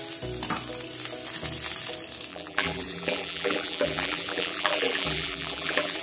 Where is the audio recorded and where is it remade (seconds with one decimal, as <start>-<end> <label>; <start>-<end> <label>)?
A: 0.0-2.3 recorded; 2.3-6.0 remade